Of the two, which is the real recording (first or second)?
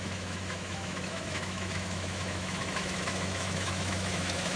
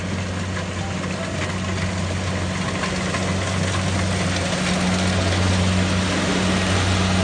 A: second